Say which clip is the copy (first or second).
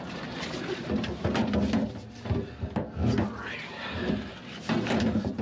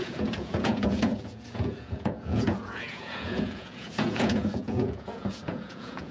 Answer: second